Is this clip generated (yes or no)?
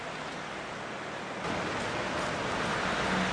no